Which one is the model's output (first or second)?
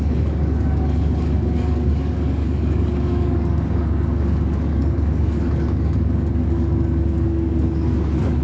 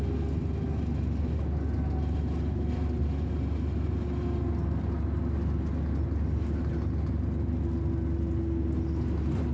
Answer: first